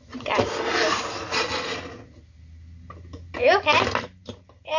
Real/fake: real